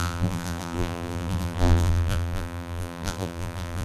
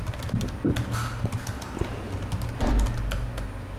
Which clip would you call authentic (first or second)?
second